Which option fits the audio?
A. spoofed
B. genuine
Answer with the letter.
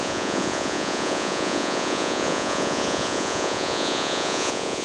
A